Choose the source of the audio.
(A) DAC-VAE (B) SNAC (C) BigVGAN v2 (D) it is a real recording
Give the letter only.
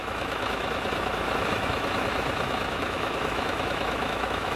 A